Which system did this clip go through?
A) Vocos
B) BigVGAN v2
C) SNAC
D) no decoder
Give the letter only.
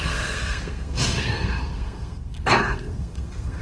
C